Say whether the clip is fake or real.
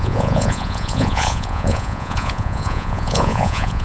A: fake